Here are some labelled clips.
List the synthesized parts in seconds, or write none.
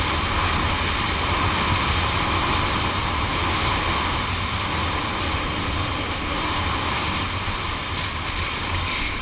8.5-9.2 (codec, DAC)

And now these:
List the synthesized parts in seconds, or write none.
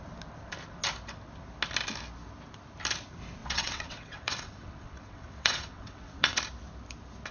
3.4-6.4 (vocoder, WaveNeXt)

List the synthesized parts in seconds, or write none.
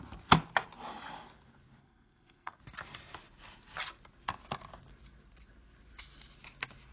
1.8-2.6 (codec, SNAC)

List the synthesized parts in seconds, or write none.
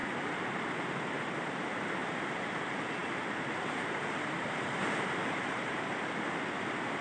0.0-0.7 (vocoder, BigVGAN v2); 3.0-5.7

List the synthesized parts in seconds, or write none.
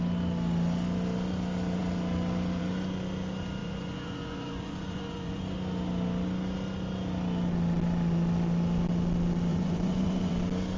3.6-5.4 (vocoder, Vocos); 9.5-10.3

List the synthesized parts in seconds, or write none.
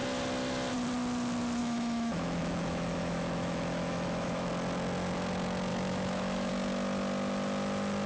1.6-4.5 (autoencoder, DAC-VAE); 5.7-6.5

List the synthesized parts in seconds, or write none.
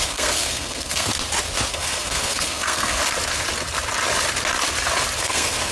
0.0-1.1 (codec, SNAC); 1.7-3.0; 5.2-5.7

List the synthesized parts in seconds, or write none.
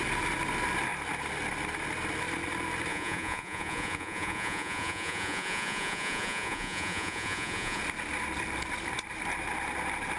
2.9-7.8 (vocoder, Vocos)